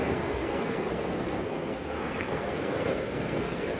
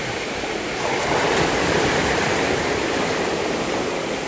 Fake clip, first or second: first